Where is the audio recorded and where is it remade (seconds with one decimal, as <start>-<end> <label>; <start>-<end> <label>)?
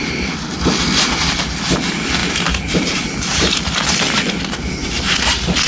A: 0.0-2.2 recorded; 2.2-3.7 remade; 3.7-5.7 recorded